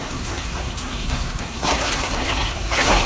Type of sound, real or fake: fake